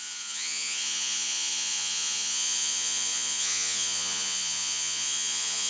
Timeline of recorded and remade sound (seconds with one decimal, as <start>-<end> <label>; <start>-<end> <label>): 0.0-5.7 remade